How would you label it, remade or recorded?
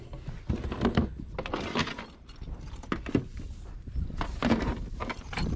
recorded